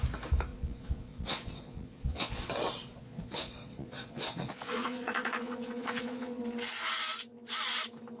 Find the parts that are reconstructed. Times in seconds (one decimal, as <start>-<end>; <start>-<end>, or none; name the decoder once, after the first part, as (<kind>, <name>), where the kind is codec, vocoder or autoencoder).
0.5-2.5 (vocoder, Vocos); 3.0-6.4